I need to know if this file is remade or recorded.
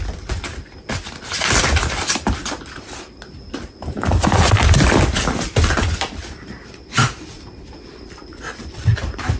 remade